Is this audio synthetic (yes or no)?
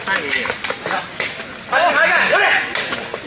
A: no